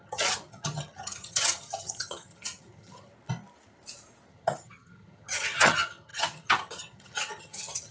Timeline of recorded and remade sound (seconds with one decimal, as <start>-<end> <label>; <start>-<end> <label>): 0.0-3.1 remade; 3.1-4.3 recorded; 4.3-7.9 remade